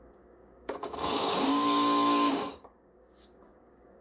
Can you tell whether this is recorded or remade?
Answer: remade